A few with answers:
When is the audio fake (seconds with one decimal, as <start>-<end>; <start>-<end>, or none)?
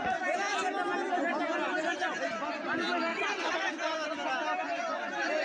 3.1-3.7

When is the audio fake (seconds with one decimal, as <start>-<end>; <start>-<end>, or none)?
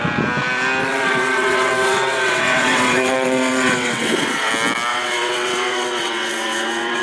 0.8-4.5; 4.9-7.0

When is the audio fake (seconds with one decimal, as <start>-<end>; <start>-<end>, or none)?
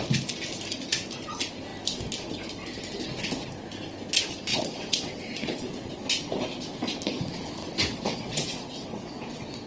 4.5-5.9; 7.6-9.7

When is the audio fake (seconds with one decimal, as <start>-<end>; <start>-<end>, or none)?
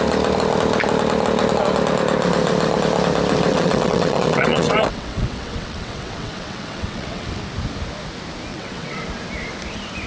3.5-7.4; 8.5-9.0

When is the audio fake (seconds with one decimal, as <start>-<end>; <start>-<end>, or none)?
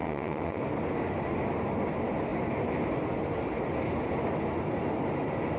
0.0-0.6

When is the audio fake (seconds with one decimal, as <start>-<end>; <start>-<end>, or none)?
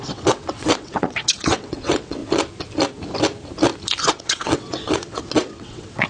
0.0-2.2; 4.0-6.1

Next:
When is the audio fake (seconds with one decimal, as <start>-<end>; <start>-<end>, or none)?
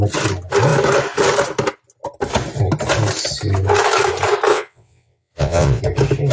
4.5-5.8